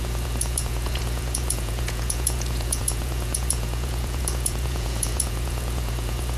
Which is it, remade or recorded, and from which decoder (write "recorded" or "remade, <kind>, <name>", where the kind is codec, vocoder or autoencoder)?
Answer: remade, vocoder, Vocos